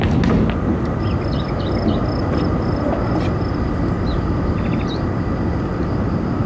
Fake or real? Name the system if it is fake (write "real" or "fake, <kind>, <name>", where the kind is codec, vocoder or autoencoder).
real